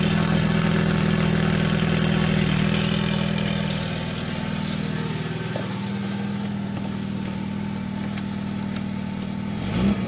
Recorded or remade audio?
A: recorded